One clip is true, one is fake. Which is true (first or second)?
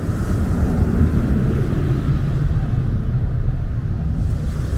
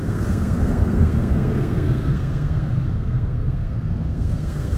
first